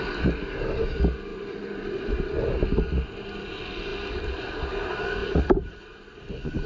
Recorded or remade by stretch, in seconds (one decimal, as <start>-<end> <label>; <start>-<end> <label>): 0.0-1.3 recorded; 1.3-2.2 remade; 2.2-5.2 recorded; 5.2-5.8 remade; 5.8-6.7 recorded